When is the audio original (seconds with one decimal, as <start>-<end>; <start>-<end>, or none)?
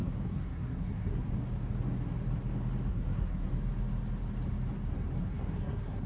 1.3-2.9; 3.5-5.2